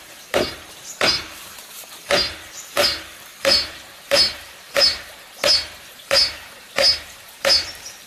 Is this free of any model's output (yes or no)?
no